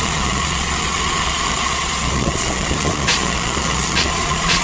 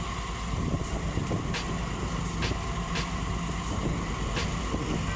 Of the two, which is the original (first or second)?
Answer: second